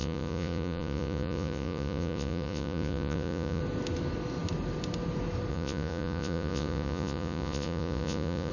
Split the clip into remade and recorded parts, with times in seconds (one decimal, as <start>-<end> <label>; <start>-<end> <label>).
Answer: 0.0-3.6 remade; 3.6-5.5 recorded; 5.5-8.5 remade